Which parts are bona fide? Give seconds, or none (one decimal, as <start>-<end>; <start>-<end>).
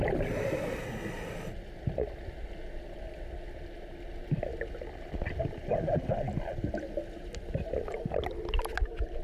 0.0-4.5; 6.8-9.2